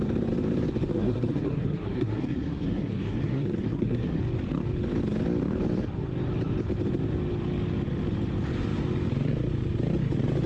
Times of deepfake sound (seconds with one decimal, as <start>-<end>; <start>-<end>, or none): 0.9-4.2